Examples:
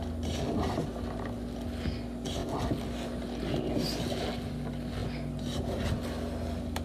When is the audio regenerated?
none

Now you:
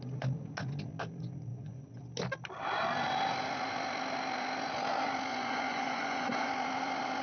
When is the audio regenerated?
1.5-2.0 (vocoder, Vocos); 5.3-6.5

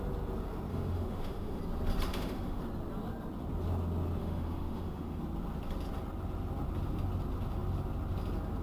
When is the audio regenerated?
0.7-1.6 (autoencoder, DAC-VAE); 2.1-2.6; 4.2-5.2